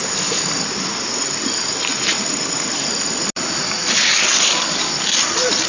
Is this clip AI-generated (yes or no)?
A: no